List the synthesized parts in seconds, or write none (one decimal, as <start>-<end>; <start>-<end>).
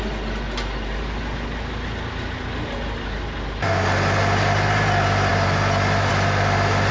none